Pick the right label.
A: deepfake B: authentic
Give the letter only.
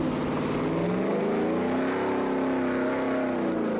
B